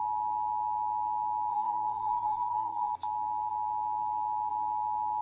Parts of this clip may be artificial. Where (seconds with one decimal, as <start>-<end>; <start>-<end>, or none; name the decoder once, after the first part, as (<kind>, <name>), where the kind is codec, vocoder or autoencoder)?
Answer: 1.5-2.9 (codec, SNAC)